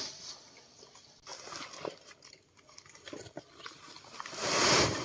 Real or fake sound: real